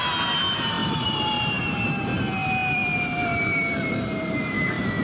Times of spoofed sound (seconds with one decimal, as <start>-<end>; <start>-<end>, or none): 0.8-1.6; 2.8-5.0